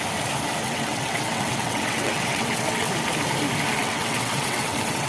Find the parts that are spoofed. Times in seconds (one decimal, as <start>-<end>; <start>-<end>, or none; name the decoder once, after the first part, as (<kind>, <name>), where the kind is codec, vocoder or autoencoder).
0.6-2.9 (vocoder, WaveNeXt); 3.8-5.1